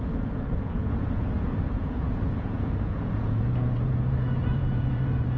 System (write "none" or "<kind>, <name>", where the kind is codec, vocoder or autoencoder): vocoder, Vocos